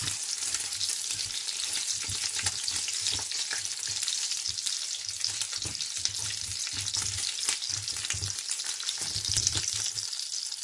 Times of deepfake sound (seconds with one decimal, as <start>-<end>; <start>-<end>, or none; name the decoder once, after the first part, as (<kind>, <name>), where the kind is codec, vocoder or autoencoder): none